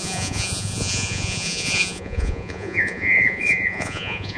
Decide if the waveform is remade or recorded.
remade